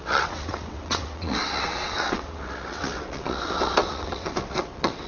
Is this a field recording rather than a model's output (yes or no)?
no